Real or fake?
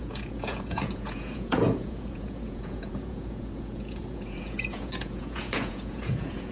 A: fake